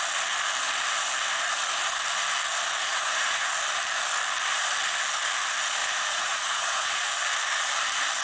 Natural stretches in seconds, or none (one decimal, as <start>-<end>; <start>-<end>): 0.0-2.8; 3.5-5.8; 7.1-8.2